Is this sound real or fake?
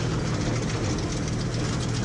real